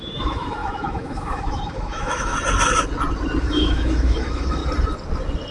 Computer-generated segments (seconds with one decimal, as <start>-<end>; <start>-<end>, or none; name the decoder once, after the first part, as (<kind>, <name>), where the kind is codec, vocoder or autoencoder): 0.0-2.3 (autoencoder, DAC-VAE); 3.4-4.6